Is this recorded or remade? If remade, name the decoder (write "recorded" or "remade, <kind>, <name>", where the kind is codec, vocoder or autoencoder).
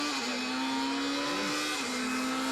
recorded